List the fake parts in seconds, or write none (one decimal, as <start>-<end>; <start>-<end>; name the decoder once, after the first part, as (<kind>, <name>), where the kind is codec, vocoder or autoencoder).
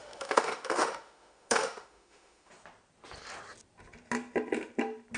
0.0-2.5 (autoencoder, DAC-VAE)